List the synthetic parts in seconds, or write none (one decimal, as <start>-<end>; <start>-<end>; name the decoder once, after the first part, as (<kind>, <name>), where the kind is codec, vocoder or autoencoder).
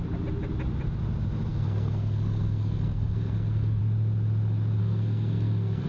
1.5-3.8 (codec, SNAC); 4.8-5.9